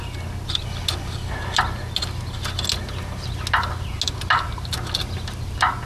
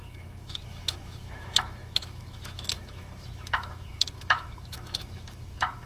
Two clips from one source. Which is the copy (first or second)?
second